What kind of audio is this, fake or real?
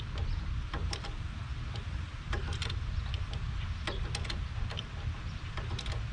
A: real